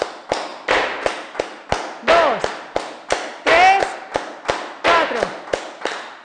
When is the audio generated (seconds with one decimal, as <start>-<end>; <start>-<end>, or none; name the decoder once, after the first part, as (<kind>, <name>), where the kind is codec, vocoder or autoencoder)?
none